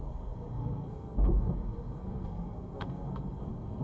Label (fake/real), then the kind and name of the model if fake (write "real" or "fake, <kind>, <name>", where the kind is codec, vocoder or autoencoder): fake, codec, SNAC